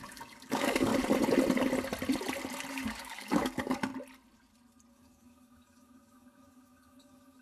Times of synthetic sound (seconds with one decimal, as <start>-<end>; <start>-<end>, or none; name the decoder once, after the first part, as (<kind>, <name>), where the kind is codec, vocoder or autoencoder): 0.0-0.9 (codec, DAC); 2.7-3.9; 4.9-7.4